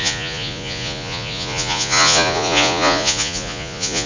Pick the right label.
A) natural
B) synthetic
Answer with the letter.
B